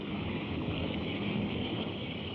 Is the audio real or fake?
fake